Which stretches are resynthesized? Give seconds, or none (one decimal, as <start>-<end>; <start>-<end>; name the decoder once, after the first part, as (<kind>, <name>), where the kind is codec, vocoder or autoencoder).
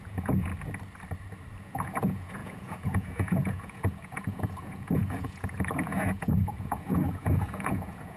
0.0-0.5 (vocoder, Vocos); 1.6-8.2